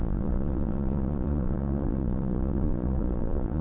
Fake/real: fake